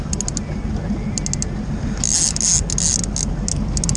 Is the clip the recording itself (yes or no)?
yes